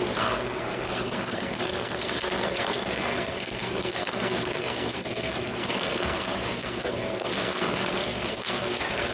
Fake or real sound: fake